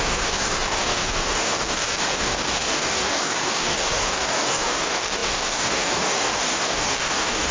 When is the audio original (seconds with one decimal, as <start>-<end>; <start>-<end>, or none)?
none